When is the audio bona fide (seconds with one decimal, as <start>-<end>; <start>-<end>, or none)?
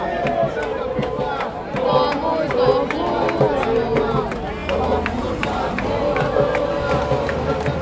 0.0-0.7; 2.0-7.8